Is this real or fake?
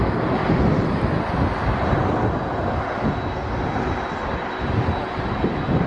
real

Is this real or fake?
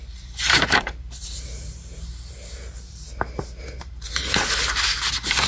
fake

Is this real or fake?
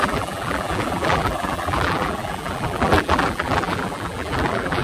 fake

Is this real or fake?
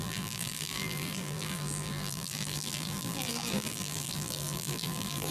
fake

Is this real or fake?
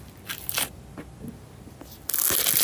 real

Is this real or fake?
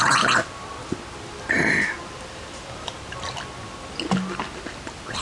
real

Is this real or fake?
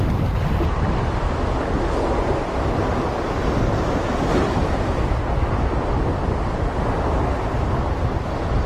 real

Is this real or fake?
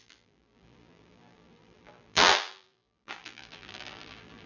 fake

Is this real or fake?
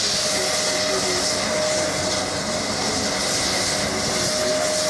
real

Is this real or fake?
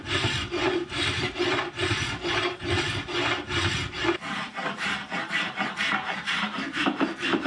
fake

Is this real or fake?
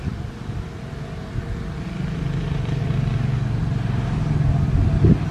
real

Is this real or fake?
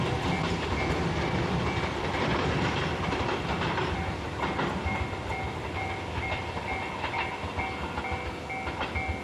real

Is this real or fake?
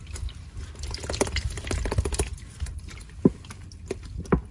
real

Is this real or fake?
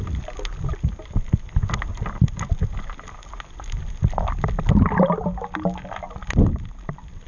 real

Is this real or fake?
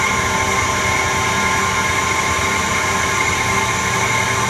real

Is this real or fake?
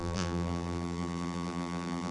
fake